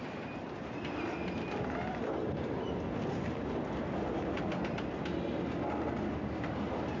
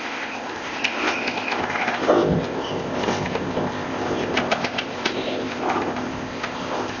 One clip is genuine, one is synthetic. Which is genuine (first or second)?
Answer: first